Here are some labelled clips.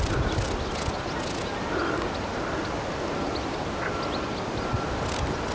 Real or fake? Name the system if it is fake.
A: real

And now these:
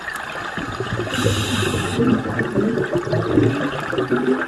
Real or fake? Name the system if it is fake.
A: real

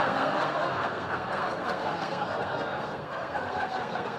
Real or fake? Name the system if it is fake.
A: fake, codec, SNAC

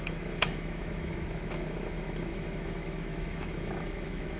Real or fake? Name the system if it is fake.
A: fake, autoencoder, DAC-VAE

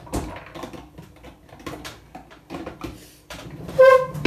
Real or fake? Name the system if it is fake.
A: real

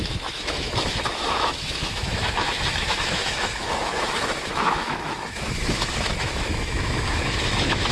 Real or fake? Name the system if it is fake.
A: fake, autoencoder, DAC-VAE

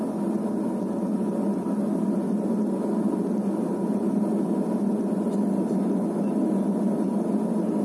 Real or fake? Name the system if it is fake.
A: real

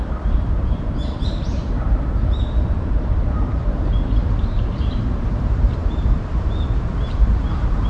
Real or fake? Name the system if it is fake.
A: fake, vocoder, BigVGAN v2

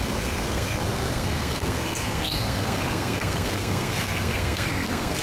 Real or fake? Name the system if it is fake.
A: fake, codec, SNAC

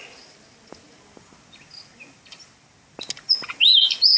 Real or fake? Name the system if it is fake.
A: real